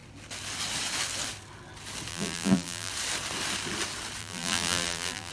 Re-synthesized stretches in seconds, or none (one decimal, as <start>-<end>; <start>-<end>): 2.1-2.9; 4.2-5.3